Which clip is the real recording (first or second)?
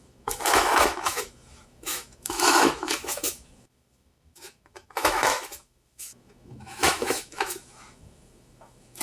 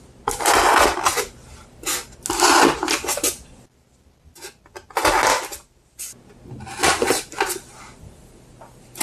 second